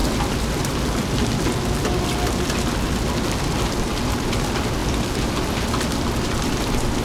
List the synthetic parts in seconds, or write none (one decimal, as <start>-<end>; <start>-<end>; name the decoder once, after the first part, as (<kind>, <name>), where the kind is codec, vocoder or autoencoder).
none